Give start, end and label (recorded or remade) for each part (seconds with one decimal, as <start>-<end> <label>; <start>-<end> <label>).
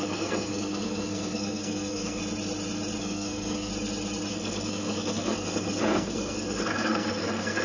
0.0-2.2 remade; 2.2-3.0 recorded; 3.0-3.7 remade; 3.7-4.3 recorded; 4.3-7.6 remade